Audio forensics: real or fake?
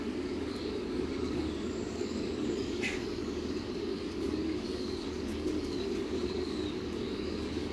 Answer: fake